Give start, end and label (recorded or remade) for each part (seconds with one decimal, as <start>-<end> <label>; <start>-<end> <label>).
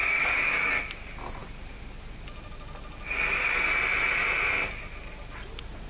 0.0-0.7 remade; 0.7-5.9 recorded